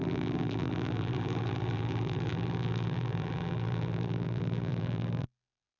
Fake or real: fake